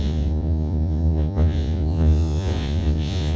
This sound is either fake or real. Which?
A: fake